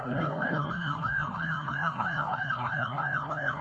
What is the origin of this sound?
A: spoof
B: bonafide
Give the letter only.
A